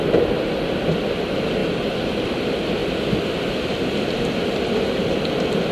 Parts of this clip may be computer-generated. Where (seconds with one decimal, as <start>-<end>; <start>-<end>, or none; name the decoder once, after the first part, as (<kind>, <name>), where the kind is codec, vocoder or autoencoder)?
none